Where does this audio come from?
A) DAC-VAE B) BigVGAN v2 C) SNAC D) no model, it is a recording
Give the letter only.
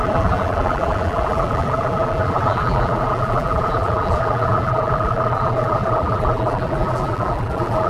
B